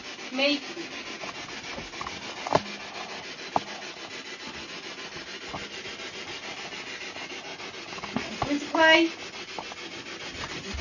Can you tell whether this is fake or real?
real